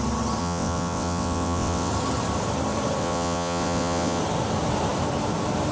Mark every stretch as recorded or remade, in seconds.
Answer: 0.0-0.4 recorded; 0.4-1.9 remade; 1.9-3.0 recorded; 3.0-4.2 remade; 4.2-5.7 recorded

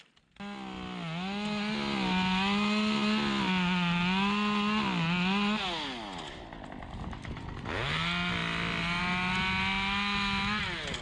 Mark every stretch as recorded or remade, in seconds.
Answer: 0.0-11.0 recorded

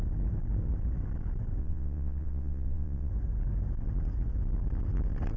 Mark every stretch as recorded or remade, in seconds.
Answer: 0.0-1.6 recorded; 1.6-3.1 remade; 3.1-5.4 recorded

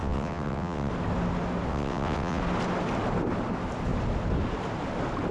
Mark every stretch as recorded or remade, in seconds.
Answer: 0.0-0.9 remade; 0.9-1.7 recorded; 1.7-2.4 remade; 2.4-5.3 recorded

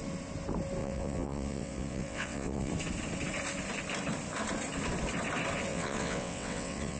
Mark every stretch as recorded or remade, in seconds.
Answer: 0.0-0.8 recorded; 0.8-2.7 remade; 2.7-5.7 recorded; 5.7-7.0 remade

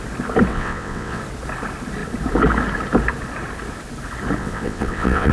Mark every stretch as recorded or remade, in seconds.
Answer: 0.0-0.5 recorded; 0.5-1.2 remade; 1.2-4.4 recorded; 4.4-5.3 remade